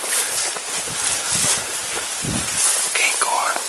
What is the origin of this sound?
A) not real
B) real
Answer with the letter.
B